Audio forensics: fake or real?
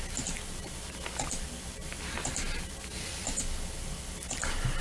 real